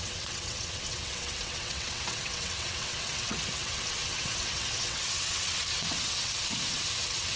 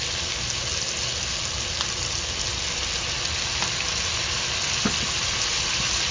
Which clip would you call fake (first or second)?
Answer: first